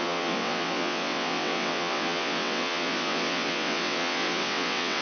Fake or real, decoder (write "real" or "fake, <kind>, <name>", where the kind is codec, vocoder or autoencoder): fake, vocoder, WaveNeXt